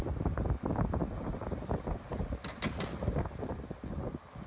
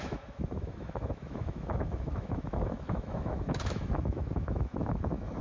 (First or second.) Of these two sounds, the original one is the first